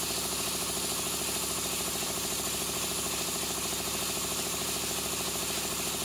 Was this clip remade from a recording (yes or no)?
no